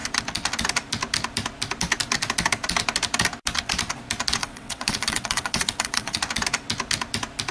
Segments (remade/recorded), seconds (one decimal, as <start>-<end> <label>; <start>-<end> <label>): 0.0-4.4 recorded; 4.4-6.2 remade; 6.2-7.5 recorded

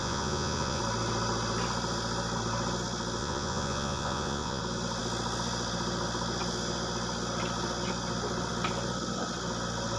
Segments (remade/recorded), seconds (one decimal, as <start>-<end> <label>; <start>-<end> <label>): 0.0-0.8 remade; 0.8-3.2 recorded; 3.2-4.6 remade; 4.6-10.0 recorded

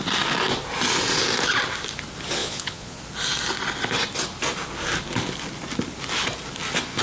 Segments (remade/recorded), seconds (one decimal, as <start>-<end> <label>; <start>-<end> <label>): 0.0-2.4 recorded; 2.4-3.0 remade; 3.0-7.0 recorded

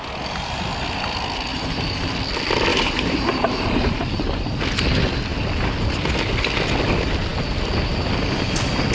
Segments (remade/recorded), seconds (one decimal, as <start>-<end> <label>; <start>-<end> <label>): 0.0-1.5 recorded; 1.5-2.1 remade; 2.1-2.7 recorded; 2.7-4.6 remade; 4.6-8.9 recorded